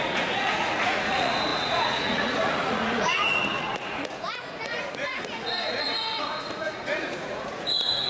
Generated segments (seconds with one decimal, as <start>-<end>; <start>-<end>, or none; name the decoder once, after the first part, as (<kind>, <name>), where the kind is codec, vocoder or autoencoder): 0.0-8.1 (vocoder, Vocos)